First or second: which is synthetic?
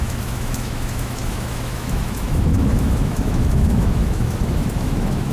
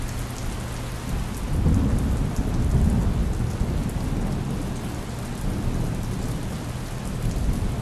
first